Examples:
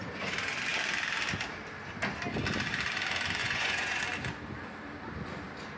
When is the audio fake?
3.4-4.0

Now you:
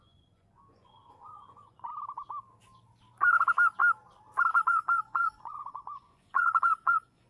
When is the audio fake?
0.0-1.9; 4.5-7.3

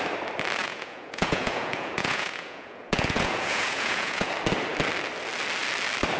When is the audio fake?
0.6-4.3

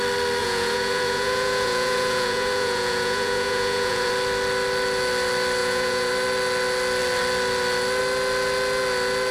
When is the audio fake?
0.4-4.1; 5.6-6.1

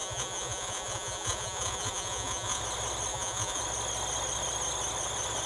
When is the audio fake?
0.0-2.6; 3.1-3.6

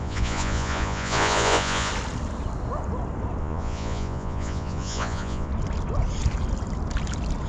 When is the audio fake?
0.0-1.9; 3.4-5.5

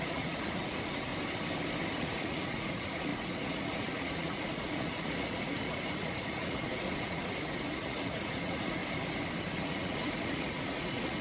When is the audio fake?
0.0-1.1; 1.9-8.8; 9.6-11.2